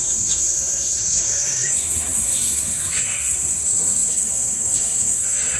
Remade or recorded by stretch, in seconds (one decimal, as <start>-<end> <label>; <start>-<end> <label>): 0.0-5.6 remade